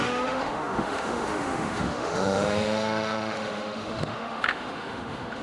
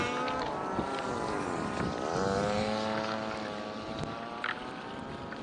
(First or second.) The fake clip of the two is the first